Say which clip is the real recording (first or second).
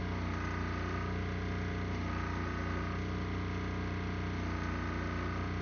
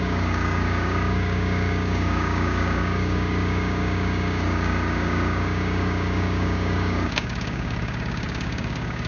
first